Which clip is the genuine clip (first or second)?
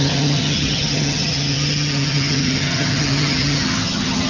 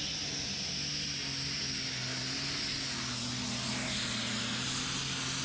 second